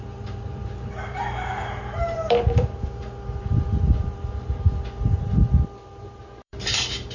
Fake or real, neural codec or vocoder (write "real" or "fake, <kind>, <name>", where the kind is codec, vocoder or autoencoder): fake, vocoder, BigVGAN v2